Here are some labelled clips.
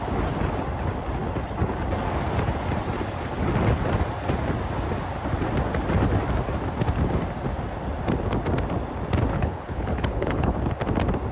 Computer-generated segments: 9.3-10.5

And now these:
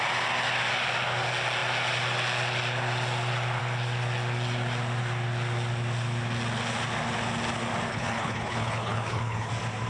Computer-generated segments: 7.9-9.5

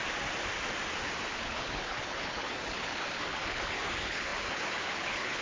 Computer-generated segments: 1.4-5.4

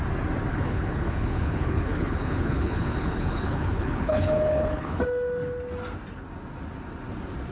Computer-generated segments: 0.5-5.0

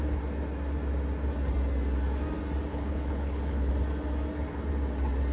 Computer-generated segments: 2.7-3.7

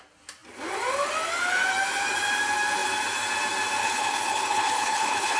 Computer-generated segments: 3.8-5.4

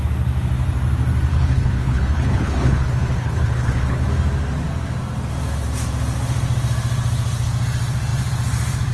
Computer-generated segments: 1.3-4.1

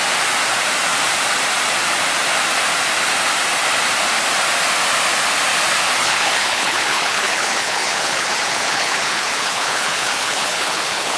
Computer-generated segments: 6.0-11.2